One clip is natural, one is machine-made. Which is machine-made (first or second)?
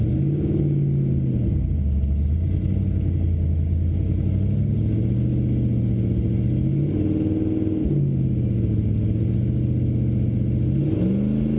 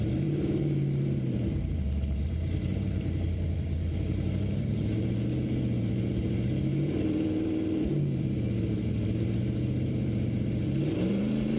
second